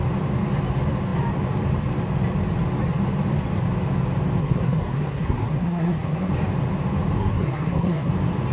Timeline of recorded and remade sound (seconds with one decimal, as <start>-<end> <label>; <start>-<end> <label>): 0.0-4.4 recorded; 4.4-6.3 remade; 6.3-7.2 recorded; 7.2-8.1 remade; 8.1-8.5 recorded